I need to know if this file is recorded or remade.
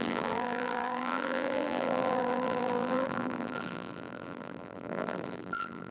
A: remade